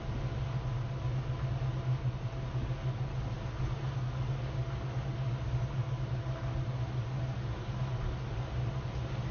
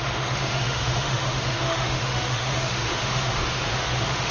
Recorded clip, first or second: first